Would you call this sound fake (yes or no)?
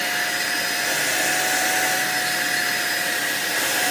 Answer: no